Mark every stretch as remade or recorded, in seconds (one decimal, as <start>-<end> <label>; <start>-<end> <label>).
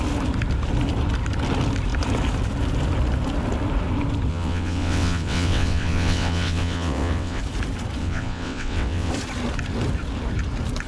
0.0-4.3 recorded; 4.3-7.4 remade; 7.4-8.0 recorded; 8.0-9.1 remade; 9.1-10.9 recorded